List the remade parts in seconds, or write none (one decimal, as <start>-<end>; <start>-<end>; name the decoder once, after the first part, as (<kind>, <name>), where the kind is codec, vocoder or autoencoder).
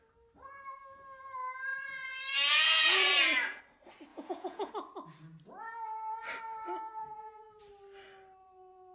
1.7-3.6 (vocoder, Vocos); 4.1-4.7; 7.0-7.6